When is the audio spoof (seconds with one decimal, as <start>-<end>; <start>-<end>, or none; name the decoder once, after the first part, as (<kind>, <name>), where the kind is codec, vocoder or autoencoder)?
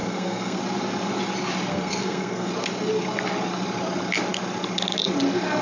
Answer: 0.0-0.6 (codec, SNAC); 1.7-2.5